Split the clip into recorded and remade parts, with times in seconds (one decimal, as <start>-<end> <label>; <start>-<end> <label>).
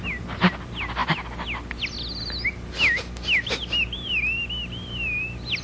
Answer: 0.0-5.6 recorded